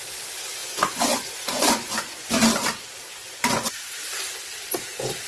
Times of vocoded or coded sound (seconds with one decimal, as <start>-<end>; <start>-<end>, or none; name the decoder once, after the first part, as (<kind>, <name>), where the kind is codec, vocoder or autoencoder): 0.6-2.3 (vocoder, Vocos); 3.2-4.0